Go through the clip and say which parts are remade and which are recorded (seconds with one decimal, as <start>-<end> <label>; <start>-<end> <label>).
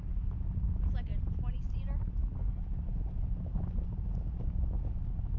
0.0-5.4 recorded